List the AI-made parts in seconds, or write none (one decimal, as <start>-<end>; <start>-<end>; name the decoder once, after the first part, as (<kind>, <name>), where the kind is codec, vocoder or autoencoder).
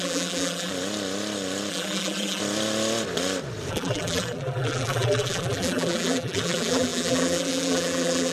0.0-0.7 (vocoder, BigVGAN v2); 1.7-2.4; 3.7-8.3